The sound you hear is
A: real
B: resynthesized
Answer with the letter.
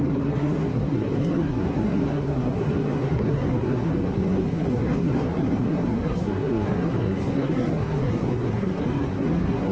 B